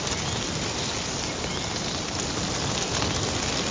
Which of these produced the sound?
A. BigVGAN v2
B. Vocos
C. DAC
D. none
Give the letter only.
D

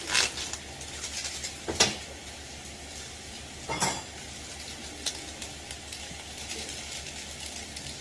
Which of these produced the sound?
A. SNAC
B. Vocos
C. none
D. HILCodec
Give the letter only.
C